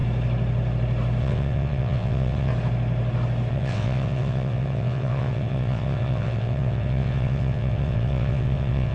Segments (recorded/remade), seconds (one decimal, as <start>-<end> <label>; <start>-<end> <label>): 0.0-1.2 recorded; 1.2-2.5 remade; 2.5-3.5 recorded; 3.5-8.9 remade